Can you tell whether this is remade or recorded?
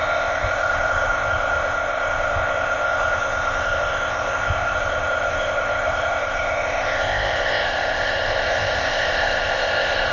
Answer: remade